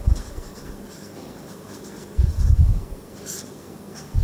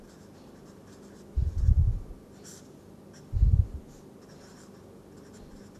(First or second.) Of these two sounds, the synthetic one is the first